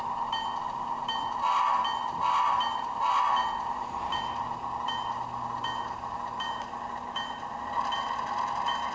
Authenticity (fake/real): real